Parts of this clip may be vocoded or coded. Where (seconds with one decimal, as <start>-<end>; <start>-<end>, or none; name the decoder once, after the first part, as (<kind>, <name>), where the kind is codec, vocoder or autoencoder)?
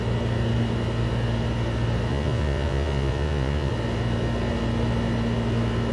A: 2.1-3.7 (vocoder, Vocos)